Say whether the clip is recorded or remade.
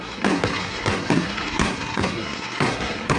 remade